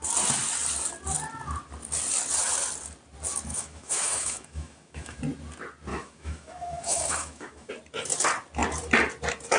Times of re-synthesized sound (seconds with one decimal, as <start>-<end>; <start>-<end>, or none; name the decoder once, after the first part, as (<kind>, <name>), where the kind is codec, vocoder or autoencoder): 3.5-5.2 (autoencoder, DAC-VAE); 5.9-7.7